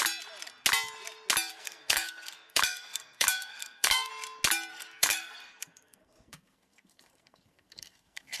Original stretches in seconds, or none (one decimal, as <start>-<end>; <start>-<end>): 0.0-1.5; 4.1-4.7